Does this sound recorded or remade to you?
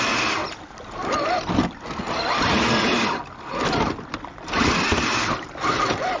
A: recorded